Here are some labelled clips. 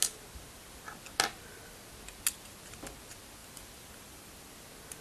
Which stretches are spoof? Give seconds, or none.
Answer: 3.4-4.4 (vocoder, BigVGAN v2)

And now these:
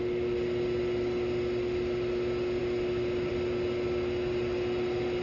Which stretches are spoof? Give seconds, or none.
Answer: none

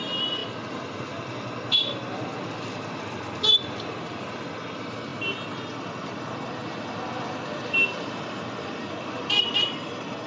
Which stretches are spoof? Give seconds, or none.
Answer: none

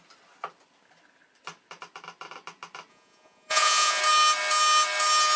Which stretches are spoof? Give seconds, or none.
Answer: 2.9-4.0 (vocoder, Vocos)

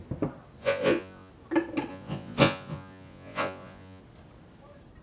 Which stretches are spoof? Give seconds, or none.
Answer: 0.6-1.3 (vocoder, Vocos); 1.9-4.0